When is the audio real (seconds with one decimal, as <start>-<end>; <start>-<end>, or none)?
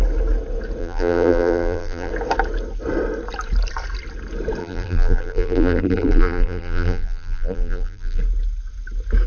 0.0-0.8; 2.1-4.6; 8.2-9.3